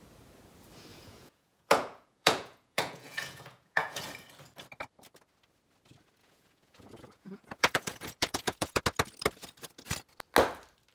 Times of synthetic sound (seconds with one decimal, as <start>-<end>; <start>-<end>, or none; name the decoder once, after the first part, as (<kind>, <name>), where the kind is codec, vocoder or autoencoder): 0.9-4.0 (vocoder, Vocos); 6.2-8.8